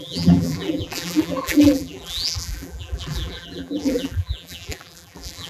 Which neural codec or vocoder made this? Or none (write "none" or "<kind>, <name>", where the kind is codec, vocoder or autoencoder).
vocoder, BigVGAN v2